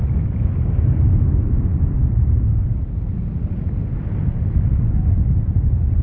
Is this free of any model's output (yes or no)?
yes